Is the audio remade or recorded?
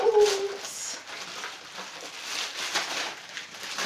recorded